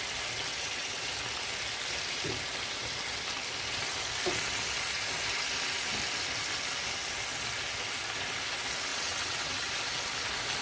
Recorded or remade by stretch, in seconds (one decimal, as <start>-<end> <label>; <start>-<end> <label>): 0.0-0.5 recorded; 0.5-1.1 remade; 1.1-8.9 recorded; 8.9-9.7 remade; 9.7-10.6 recorded